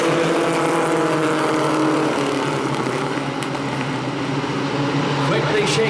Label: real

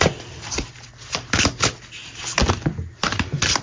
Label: real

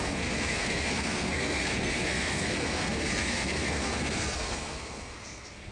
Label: fake